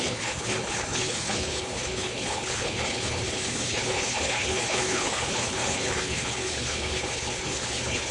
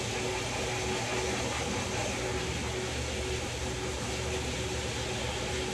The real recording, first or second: second